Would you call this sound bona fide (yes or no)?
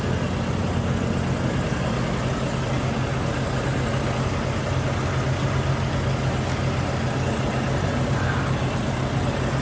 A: yes